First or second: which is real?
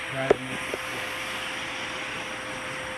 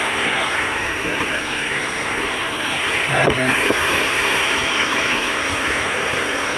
first